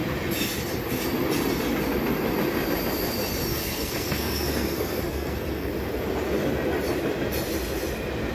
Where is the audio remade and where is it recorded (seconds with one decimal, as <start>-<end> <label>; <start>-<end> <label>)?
0.0-3.5 recorded; 3.5-5.7 remade; 5.7-8.3 recorded